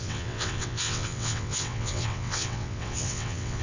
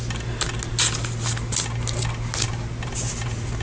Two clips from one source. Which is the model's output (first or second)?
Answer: first